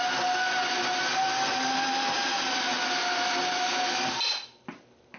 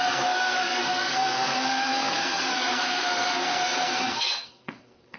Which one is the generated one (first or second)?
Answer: second